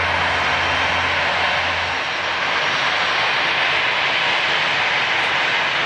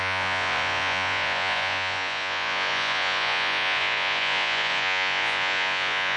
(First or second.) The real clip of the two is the first